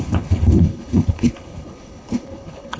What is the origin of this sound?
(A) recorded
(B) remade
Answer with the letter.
B